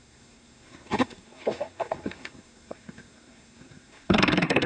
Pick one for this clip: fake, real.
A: fake